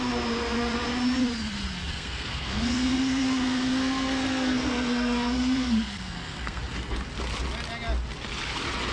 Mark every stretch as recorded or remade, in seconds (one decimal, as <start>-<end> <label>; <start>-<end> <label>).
0.0-1.9 recorded; 1.9-6.6 remade; 6.6-8.9 recorded